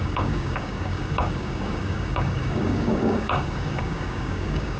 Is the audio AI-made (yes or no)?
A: yes